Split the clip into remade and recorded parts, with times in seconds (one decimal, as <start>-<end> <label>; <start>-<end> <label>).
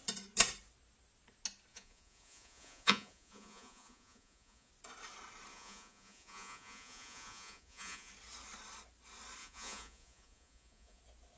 0.0-1.7 recorded; 1.7-4.7 remade; 4.7-5.5 recorded; 5.5-8.1 remade; 8.1-9.4 recorded; 9.4-11.0 remade; 11.0-11.4 recorded